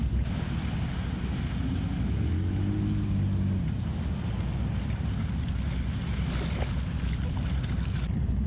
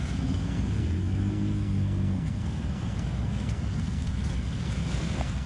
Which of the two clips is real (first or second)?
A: first